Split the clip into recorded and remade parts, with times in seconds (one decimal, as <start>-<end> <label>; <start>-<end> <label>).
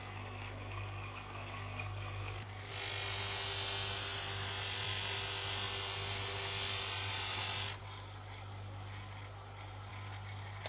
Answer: 0.0-2.7 remade; 2.7-10.7 recorded